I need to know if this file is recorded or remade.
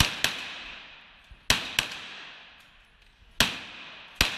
recorded